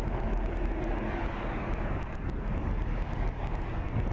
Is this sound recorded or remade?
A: remade